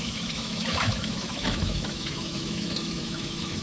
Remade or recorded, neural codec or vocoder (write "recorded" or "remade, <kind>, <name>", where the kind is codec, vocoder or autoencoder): remade, autoencoder, DAC-VAE